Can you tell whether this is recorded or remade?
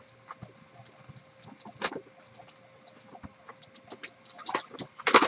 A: recorded